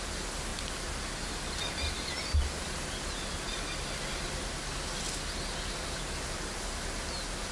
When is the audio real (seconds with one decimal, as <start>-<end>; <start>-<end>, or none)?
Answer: 0.0-7.5